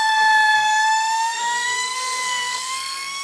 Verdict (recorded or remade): remade